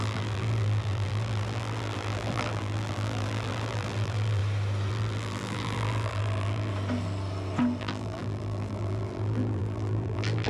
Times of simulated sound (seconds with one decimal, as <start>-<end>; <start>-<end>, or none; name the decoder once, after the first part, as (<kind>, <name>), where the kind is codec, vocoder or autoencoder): 0.0-4.4 (vocoder, BigVGAN v2); 4.9-6.7; 7.8-10.5